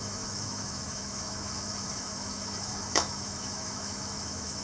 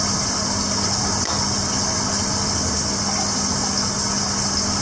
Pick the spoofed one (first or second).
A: first